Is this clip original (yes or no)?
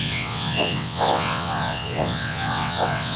no